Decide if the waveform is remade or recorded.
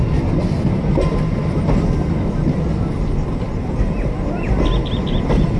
recorded